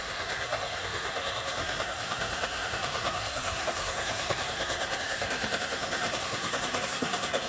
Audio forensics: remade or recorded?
remade